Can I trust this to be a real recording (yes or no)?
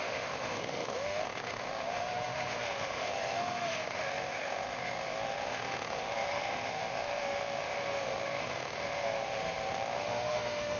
no